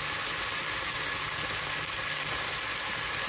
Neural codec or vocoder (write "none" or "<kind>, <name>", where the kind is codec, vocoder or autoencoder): none